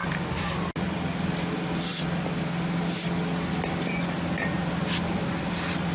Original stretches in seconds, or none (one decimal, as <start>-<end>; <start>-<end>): 0.0-5.9